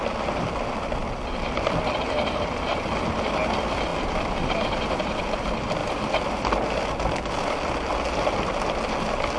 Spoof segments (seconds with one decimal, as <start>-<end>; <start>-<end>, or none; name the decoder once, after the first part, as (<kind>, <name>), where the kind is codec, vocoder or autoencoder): 1.0-2.9 (vocoder, BigVGAN v2); 3.9-5.1; 5.8-6.5